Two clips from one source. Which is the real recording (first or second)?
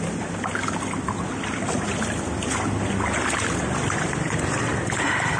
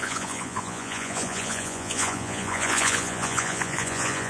first